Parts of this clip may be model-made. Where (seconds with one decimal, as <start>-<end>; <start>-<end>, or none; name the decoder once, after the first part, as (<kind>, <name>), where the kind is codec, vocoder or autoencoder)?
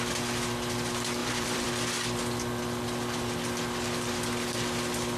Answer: 1.2-1.7 (vocoder, BigVGAN v2)